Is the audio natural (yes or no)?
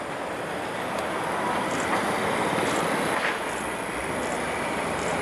yes